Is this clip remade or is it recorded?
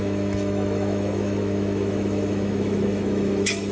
remade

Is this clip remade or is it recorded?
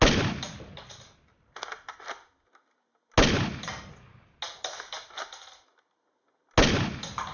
recorded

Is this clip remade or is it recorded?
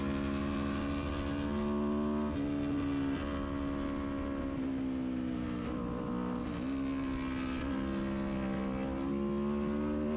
recorded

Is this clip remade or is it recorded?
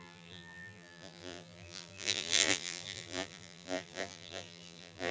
remade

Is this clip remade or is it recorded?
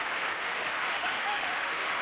remade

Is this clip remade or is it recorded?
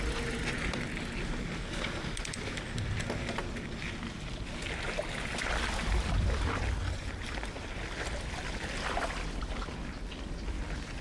recorded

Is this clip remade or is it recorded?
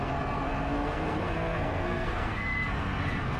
remade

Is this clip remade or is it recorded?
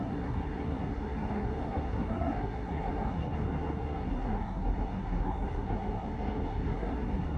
remade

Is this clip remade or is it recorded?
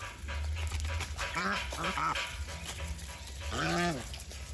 recorded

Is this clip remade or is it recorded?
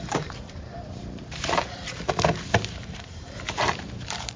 remade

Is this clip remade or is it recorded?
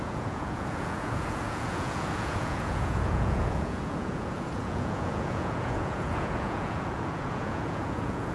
remade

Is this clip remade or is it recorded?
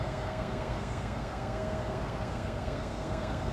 remade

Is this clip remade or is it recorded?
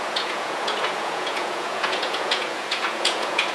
remade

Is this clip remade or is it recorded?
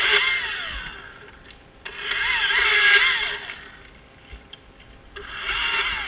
recorded